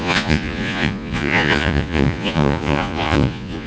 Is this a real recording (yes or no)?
no